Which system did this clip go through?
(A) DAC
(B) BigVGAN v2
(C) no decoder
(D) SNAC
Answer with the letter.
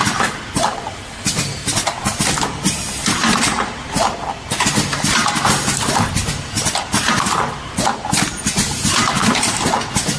C